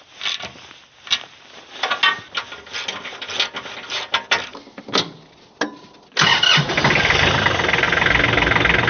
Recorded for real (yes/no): yes